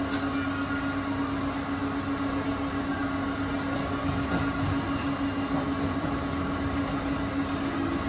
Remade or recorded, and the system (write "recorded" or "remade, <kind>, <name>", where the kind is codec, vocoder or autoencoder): recorded